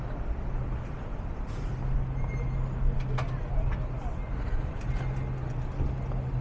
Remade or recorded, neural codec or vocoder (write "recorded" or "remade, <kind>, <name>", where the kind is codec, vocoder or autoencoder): recorded